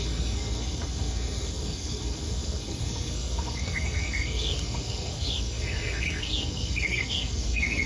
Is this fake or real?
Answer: fake